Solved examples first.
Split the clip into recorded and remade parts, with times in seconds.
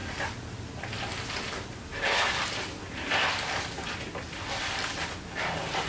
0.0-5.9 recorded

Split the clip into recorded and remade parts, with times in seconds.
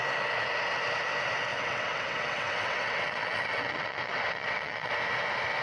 0.0-1.5 recorded; 1.5-4.9 remade; 4.9-5.6 recorded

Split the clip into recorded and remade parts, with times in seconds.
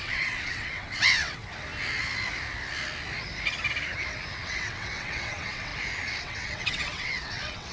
0.0-1.4 remade; 1.4-4.4 recorded; 4.4-5.7 remade; 5.7-6.2 recorded; 6.2-7.7 remade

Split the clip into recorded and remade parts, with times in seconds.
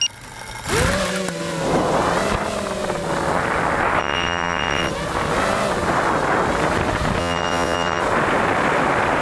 0.0-4.0 recorded; 4.0-4.9 remade; 4.9-7.2 recorded; 7.2-8.0 remade; 8.0-9.2 recorded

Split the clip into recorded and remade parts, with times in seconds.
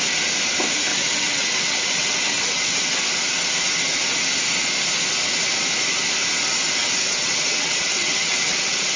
0.0-0.9 recorded; 0.9-3.0 remade; 3.0-6.8 recorded; 6.8-9.0 remade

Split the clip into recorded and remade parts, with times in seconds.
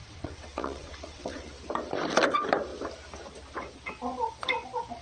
0.0-1.5 remade; 1.5-5.0 recorded